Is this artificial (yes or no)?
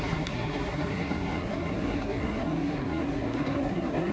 yes